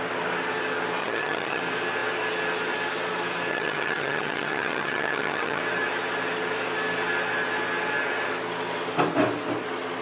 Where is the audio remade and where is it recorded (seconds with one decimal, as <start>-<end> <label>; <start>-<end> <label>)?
0.0-1.0 recorded; 1.0-1.6 remade; 1.6-3.5 recorded; 3.5-5.6 remade; 5.6-10.0 recorded

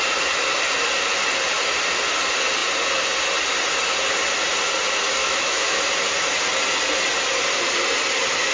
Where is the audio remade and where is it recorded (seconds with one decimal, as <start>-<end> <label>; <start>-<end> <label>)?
0.0-5.2 recorded; 5.2-5.8 remade; 5.8-8.5 recorded

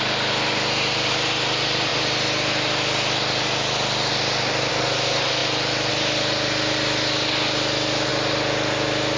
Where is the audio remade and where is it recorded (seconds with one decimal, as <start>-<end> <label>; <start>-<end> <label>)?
0.0-9.2 recorded

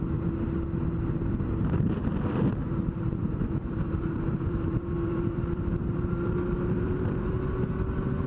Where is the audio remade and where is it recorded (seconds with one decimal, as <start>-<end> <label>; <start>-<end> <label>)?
0.0-2.6 recorded; 2.6-7.4 remade; 7.4-8.3 recorded

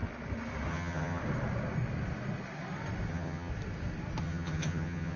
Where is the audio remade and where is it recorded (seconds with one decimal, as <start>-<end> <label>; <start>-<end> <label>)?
0.0-0.7 recorded; 0.7-1.2 remade; 1.2-3.1 recorded; 3.1-3.5 remade; 3.5-4.2 recorded; 4.2-5.2 remade

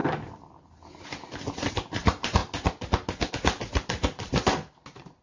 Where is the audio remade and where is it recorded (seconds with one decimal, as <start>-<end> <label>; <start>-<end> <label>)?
0.0-1.7 recorded; 1.7-2.4 remade; 2.4-3.3 recorded; 3.3-5.2 remade

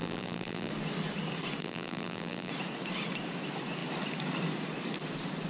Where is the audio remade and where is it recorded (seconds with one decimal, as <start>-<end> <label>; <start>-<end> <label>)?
0.0-0.7 remade; 0.7-1.6 recorded; 1.6-2.5 remade; 2.5-5.5 recorded